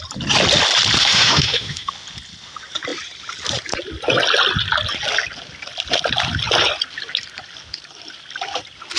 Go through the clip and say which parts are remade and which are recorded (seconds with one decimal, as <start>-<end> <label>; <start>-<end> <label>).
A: 0.0-1.0 recorded; 1.0-1.9 remade; 1.9-9.0 recorded